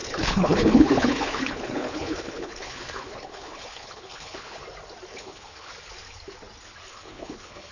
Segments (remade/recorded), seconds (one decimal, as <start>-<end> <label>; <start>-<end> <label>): 0.0-4.6 remade; 4.6-5.1 recorded; 5.1-5.7 remade; 5.7-6.9 recorded; 6.9-7.7 remade